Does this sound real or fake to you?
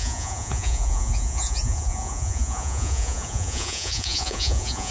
fake